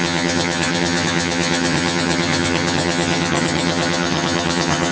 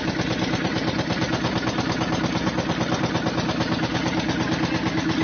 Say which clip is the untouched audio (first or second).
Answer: second